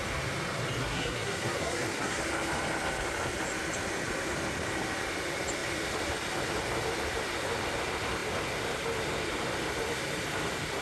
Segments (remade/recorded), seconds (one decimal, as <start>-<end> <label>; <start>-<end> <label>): 0.0-0.8 recorded; 0.8-2.2 remade; 2.2-10.8 recorded